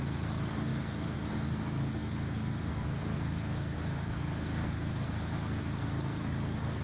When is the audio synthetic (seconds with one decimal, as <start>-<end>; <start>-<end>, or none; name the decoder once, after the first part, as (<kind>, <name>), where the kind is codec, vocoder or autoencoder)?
0.0-6.8 (codec, SNAC)